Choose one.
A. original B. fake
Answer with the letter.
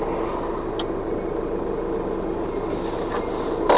A